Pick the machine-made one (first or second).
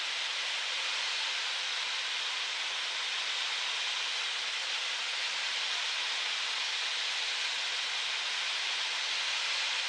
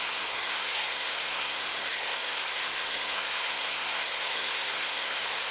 second